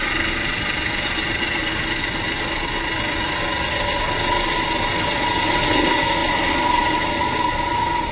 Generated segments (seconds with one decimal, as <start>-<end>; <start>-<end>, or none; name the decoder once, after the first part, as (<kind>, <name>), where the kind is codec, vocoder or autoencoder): none